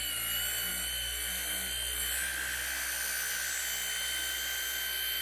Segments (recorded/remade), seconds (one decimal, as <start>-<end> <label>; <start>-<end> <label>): 0.0-5.2 recorded